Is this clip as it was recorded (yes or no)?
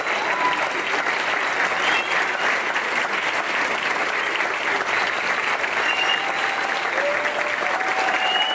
yes